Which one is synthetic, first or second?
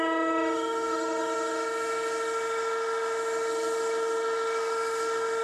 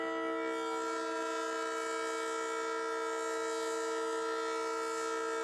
first